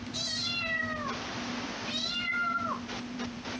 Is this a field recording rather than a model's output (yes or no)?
no